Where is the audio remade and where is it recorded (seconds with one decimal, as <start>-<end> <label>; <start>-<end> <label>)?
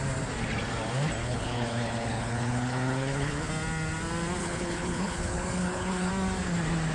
0.0-1.2 recorded; 1.2-3.5 remade; 3.5-4.4 recorded; 4.4-6.1 remade; 6.1-6.9 recorded